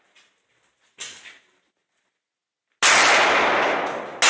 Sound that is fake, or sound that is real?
real